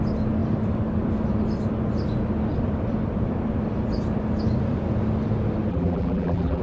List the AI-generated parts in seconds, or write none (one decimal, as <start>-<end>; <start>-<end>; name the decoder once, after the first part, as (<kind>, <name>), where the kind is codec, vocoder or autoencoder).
5.7-6.6 (vocoder, BigVGAN v2)

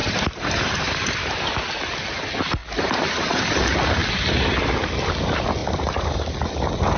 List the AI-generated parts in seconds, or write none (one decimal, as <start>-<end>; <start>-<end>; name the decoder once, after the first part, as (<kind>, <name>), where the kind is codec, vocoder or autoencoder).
0.0-1.4 (vocoder, BigVGAN v2); 2.6-3.4; 5.6-6.3